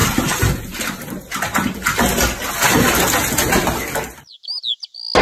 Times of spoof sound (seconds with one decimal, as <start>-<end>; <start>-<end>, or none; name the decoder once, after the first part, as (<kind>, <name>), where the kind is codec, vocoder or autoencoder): none